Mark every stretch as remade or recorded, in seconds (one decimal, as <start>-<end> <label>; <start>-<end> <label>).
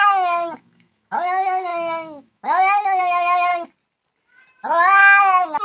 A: 0.0-3.5 remade; 3.5-5.6 recorded